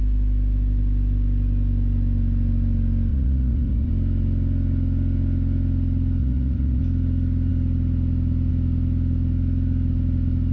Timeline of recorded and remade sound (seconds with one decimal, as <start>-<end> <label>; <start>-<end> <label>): 0.0-3.1 recorded; 3.1-3.9 remade; 3.9-6.2 recorded; 6.2-6.8 remade; 6.8-10.5 recorded